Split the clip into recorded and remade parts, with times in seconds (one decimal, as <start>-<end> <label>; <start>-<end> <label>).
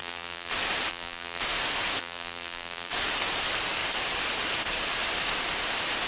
0.0-0.5 remade; 0.5-0.9 recorded; 0.9-1.4 remade; 1.4-2.0 recorded; 2.0-2.9 remade; 2.9-6.1 recorded